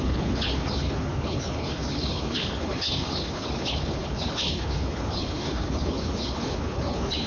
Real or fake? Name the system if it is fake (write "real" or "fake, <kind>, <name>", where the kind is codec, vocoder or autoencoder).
fake, codec, HILCodec